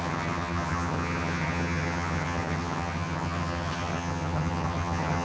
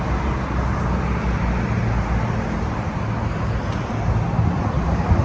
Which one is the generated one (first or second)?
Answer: first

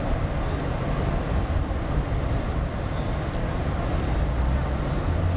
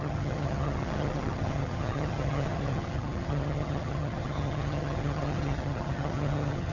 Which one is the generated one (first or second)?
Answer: second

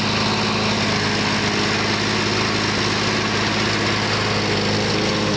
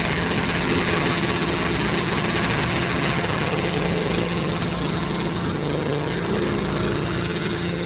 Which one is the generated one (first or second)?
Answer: second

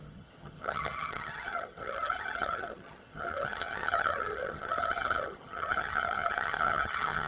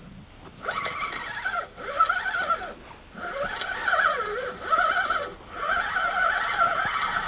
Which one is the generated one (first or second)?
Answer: first